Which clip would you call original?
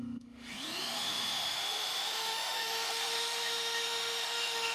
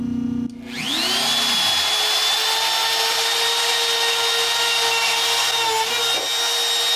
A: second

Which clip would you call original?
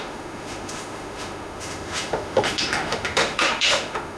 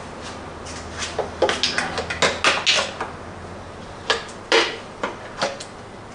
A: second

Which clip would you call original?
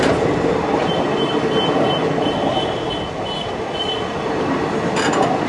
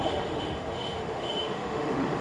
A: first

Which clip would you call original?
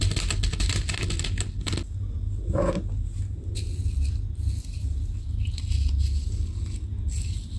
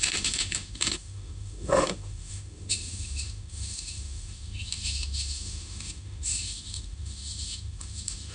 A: first